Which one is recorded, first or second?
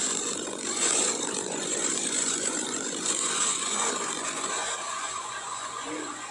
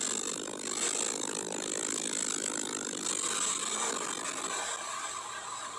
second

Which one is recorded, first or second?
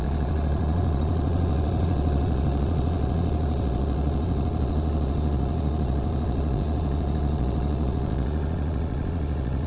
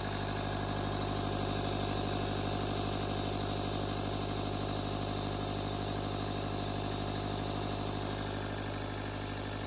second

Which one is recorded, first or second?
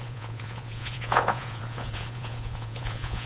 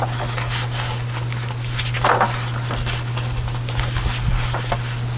second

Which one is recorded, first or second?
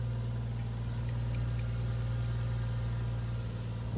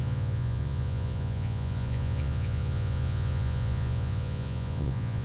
first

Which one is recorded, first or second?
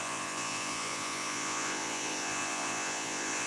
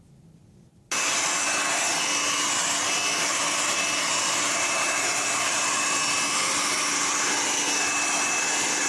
second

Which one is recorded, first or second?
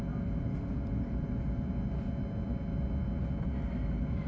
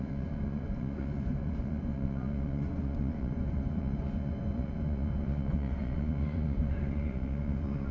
first